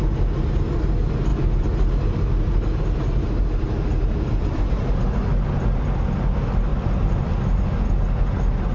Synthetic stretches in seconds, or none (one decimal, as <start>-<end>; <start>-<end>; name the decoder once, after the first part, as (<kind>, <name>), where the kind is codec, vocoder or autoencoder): 6.7-7.3 (vocoder, BigVGAN v2)